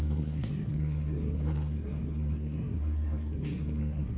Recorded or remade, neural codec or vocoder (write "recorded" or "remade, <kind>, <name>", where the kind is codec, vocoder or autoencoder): remade, codec, SNAC